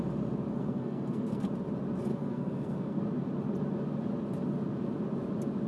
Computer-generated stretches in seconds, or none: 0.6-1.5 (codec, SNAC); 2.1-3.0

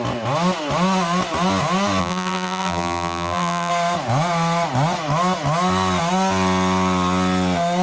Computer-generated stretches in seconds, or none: 2.0-3.7 (vocoder, BigVGAN v2)

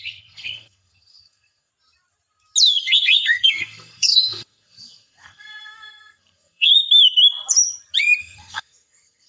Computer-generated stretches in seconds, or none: 0.0-1.7 (codec, SNAC); 2.8-6.7; 8.2-9.3